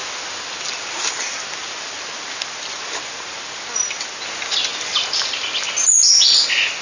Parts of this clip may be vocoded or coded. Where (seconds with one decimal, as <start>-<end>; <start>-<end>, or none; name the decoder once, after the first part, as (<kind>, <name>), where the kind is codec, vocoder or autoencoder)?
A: none